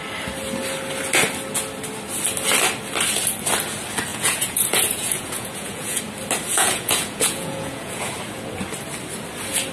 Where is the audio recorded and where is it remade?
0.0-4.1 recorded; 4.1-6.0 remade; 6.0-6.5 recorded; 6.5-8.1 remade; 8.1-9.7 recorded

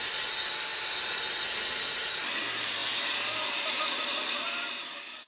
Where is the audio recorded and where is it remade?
0.0-5.3 recorded

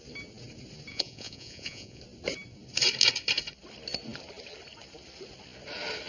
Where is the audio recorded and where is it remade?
0.0-0.9 recorded; 0.9-2.0 remade; 2.0-6.1 recorded